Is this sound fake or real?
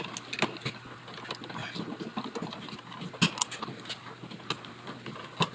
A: real